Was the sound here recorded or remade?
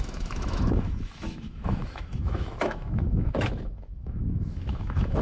remade